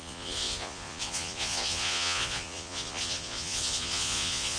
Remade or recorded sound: remade